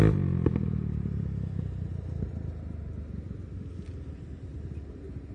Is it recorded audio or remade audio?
recorded